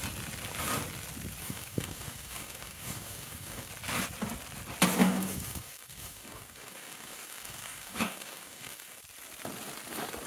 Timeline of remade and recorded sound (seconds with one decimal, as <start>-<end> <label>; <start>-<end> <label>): 0.0-1.4 recorded; 1.4-3.7 remade; 3.7-5.0 recorded; 5.0-9.0 remade; 9.0-10.3 recorded